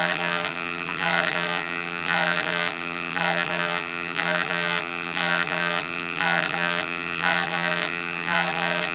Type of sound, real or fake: fake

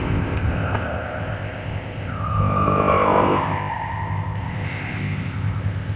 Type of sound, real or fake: fake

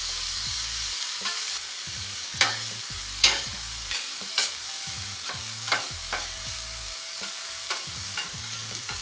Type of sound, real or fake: fake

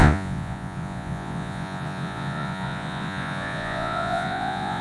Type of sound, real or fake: fake